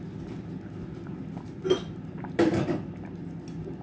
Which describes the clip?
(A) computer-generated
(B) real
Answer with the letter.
B